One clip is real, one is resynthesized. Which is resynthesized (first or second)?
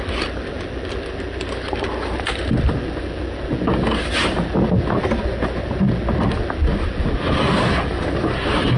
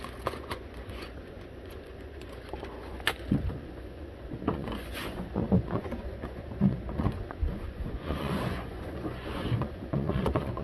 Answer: second